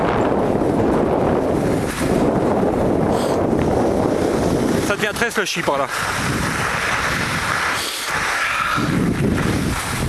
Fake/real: real